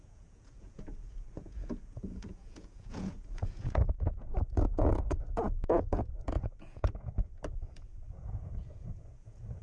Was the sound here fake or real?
fake